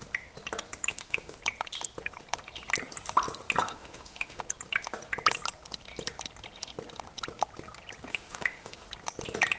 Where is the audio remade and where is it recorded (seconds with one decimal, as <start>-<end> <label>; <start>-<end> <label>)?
0.0-0.9 recorded; 0.9-1.4 remade; 1.4-3.6 recorded; 3.6-4.4 remade; 4.4-8.1 recorded; 8.1-8.9 remade; 8.9-9.6 recorded

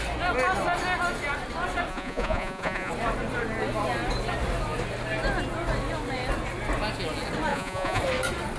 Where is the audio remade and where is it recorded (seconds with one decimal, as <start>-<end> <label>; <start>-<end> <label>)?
0.0-1.9 recorded; 1.9-2.9 remade; 2.9-7.5 recorded; 7.5-8.0 remade; 8.0-8.6 recorded